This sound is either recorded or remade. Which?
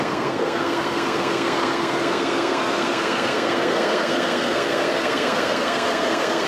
remade